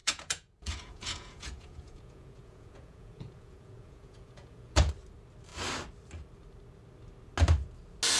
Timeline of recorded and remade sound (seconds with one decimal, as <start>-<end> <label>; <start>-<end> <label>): 0.0-4.9 remade; 4.9-8.2 recorded